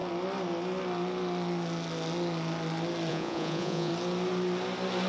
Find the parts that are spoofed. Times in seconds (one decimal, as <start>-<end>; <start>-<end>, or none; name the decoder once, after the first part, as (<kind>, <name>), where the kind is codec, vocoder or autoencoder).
3.1-3.9 (vocoder, Vocos)